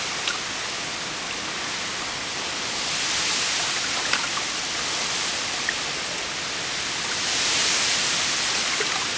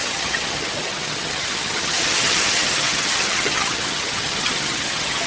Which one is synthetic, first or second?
second